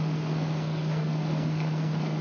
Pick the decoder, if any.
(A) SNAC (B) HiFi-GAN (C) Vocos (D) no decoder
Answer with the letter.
A